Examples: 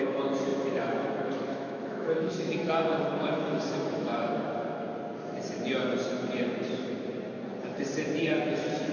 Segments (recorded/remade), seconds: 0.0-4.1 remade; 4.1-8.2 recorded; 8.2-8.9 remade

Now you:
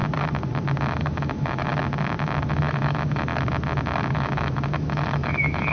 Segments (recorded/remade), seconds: 0.0-0.8 recorded; 0.8-1.7 remade; 1.7-2.5 recorded; 2.5-3.3 remade; 3.3-4.1 recorded; 4.1-5.7 remade

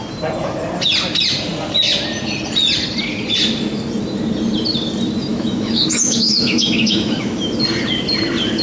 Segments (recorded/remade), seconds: 0.0-5.3 recorded; 5.3-7.5 remade; 7.5-8.6 recorded

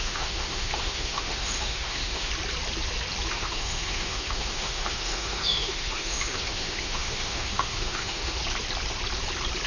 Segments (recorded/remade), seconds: 0.0-2.3 remade; 2.3-3.3 recorded; 3.3-8.4 remade; 8.4-9.7 recorded

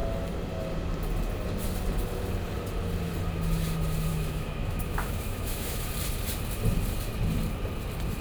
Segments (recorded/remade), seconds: 0.0-4.1 recorded; 4.1-5.9 remade; 5.9-8.2 recorded

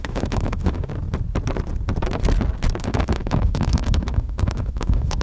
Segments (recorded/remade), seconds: 0.0-0.9 remade; 0.9-2.8 recorded; 2.8-5.2 remade

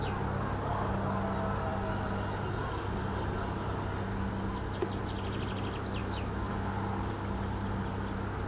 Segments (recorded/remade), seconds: 0.0-6.0 recorded; 6.0-6.7 remade; 6.7-8.5 recorded

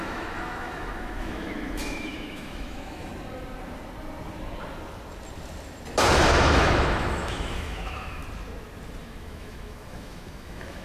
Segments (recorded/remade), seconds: 0.0-3.1 remade; 3.1-6.3 recorded; 6.3-8.2 remade; 8.2-9.0 recorded; 9.0-10.8 remade